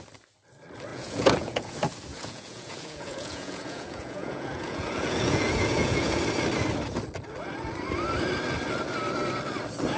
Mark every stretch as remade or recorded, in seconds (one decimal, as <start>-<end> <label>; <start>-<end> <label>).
0.0-0.9 recorded; 0.9-1.7 remade; 1.7-2.1 recorded; 2.1-6.2 remade; 6.2-10.0 recorded